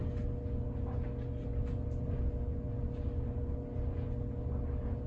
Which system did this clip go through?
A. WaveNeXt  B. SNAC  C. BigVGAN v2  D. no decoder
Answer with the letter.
D